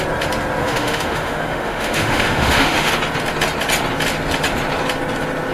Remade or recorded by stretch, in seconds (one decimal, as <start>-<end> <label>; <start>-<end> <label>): 0.0-0.6 recorded; 0.6-2.9 remade; 2.9-5.5 recorded